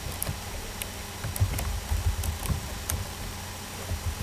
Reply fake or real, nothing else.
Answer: real